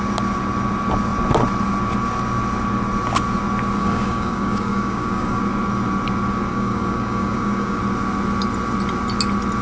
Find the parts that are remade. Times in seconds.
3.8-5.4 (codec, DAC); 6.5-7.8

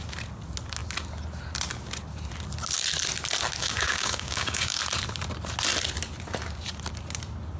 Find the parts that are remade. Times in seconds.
3.6-4.8 (codec, DAC)

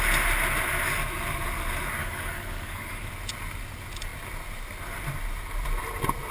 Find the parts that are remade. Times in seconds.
2.0-3.1 (codec, DAC)